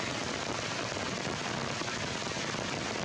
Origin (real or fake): real